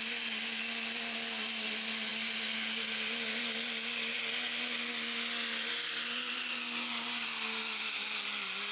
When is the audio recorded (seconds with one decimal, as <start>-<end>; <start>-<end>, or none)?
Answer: 0.0-8.7